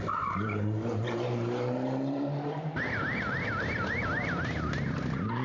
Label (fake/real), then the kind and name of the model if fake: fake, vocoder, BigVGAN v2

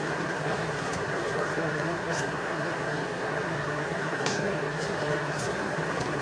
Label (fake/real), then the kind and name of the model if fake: fake, codec, SNAC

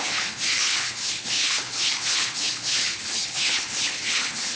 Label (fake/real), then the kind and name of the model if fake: fake, codec, HILCodec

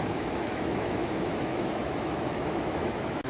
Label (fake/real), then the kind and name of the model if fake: fake, autoencoder, DAC-VAE